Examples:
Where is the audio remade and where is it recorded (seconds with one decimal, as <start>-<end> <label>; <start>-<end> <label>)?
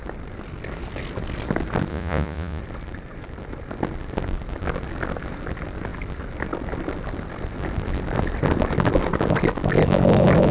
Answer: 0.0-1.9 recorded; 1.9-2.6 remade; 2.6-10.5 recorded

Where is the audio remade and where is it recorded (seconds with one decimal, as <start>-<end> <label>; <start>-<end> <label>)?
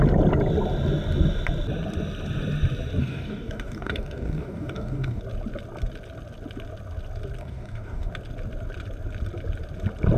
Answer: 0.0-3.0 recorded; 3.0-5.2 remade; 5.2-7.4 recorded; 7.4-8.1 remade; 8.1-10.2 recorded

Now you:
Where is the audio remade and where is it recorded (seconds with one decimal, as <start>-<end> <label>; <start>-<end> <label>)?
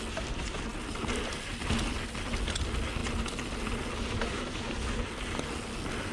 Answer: 0.0-6.1 recorded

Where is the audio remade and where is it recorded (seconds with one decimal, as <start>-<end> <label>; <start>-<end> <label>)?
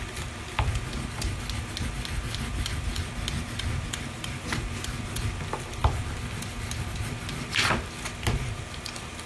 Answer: 0.0-9.3 recorded